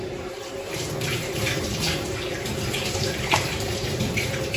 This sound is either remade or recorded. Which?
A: remade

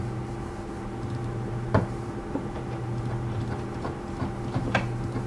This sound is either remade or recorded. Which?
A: remade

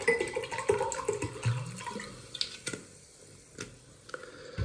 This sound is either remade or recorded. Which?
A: recorded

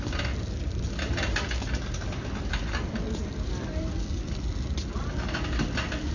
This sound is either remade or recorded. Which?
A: recorded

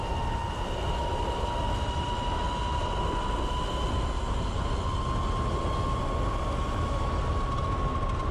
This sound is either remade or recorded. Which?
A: recorded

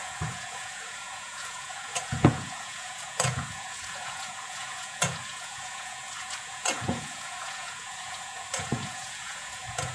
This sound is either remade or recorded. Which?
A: remade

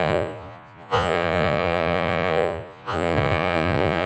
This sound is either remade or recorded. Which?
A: remade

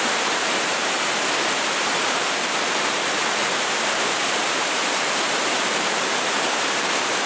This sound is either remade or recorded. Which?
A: remade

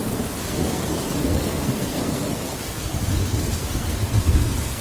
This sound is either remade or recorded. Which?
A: remade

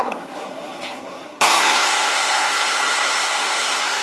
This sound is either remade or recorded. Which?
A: remade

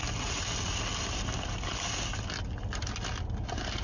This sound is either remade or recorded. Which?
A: recorded